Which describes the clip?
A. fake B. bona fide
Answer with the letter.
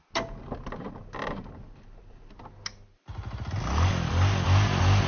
B